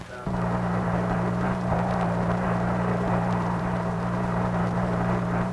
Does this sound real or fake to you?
fake